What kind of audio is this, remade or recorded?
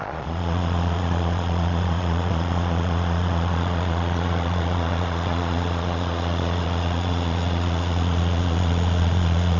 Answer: remade